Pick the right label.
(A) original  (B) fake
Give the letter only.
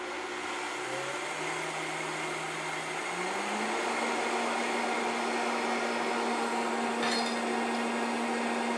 A